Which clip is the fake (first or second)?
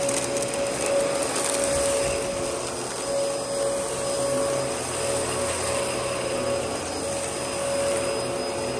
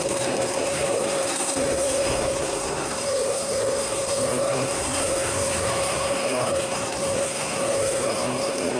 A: second